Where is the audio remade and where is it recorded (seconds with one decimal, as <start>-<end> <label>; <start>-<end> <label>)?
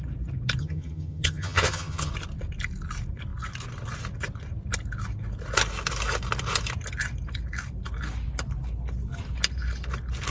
0.0-0.6 recorded; 0.6-2.1 remade; 2.1-10.3 recorded